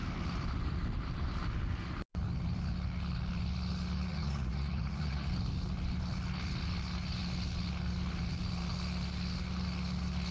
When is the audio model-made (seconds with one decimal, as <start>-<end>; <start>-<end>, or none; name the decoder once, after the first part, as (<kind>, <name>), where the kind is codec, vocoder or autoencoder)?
4.1-5.3 (vocoder, Vocos)